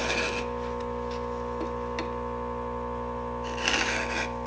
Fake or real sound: real